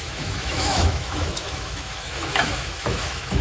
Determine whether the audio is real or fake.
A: fake